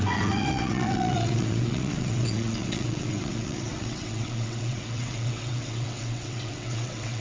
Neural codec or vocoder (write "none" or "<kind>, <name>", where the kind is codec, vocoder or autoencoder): vocoder, WaveNeXt